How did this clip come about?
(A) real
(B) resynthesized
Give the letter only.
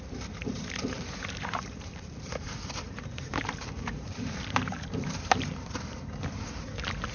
B